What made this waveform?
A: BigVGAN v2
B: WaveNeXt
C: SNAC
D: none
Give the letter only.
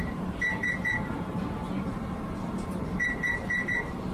A